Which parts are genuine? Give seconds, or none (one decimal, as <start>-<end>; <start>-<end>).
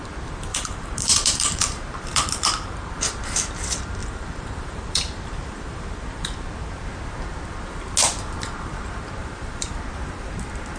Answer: 0.0-0.5; 2.7-4.0; 5.9-9.2; 9.8-10.8